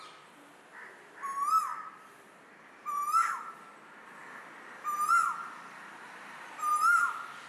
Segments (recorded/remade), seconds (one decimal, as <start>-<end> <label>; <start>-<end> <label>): 0.0-3.2 recorded; 3.2-5.1 remade; 5.1-7.5 recorded

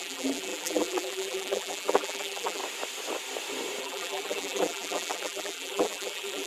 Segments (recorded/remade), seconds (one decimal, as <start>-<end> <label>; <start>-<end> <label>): 0.0-2.6 remade; 2.6-3.8 recorded; 3.8-6.5 remade

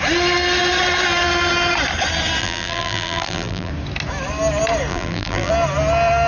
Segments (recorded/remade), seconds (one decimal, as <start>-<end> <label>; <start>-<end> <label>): 0.0-2.4 recorded; 2.4-3.7 remade; 3.7-4.9 recorded; 4.9-5.5 remade; 5.5-6.3 recorded

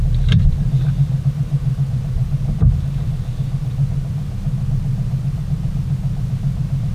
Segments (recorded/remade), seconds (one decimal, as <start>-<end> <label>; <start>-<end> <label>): 0.0-6.9 recorded

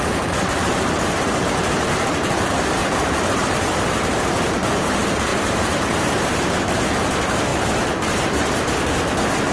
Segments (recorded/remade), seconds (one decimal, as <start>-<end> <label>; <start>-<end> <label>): 0.0-9.5 remade

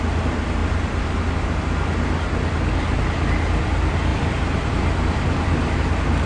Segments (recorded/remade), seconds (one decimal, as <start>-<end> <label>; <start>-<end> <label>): 0.0-0.6 recorded; 0.6-1.6 remade; 1.6-4.1 recorded; 4.1-5.7 remade; 5.7-6.3 recorded